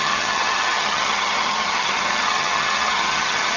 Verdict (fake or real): fake